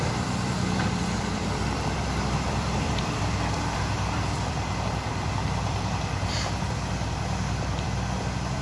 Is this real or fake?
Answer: fake